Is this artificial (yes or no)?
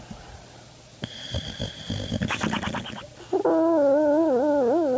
no